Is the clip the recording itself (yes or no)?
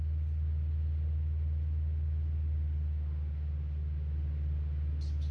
yes